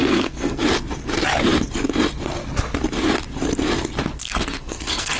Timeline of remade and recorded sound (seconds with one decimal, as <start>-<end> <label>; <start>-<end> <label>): 0.0-0.6 remade; 0.6-4.2 recorded; 4.2-5.2 remade